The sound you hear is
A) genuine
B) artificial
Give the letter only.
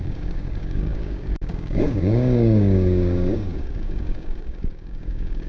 B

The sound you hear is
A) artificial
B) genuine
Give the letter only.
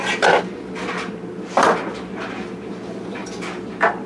B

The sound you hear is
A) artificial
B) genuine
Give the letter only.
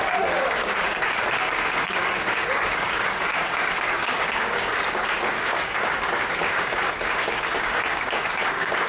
A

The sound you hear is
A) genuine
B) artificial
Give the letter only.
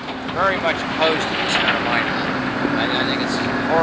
A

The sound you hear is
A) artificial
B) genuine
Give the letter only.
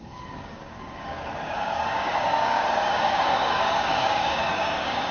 A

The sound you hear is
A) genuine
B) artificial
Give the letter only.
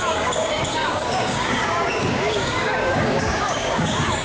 B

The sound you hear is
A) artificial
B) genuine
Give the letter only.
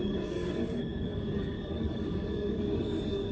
A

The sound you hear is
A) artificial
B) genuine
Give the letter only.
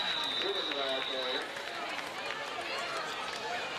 B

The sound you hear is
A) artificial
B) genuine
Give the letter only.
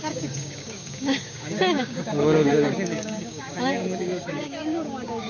A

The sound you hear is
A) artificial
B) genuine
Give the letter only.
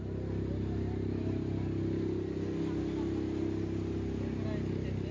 B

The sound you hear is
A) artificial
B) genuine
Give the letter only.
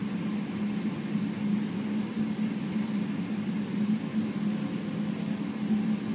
B